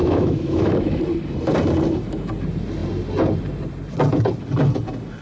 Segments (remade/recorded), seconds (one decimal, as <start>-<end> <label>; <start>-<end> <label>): 0.0-1.0 remade; 1.0-5.2 recorded